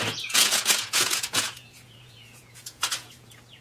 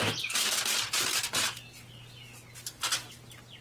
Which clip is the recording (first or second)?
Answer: second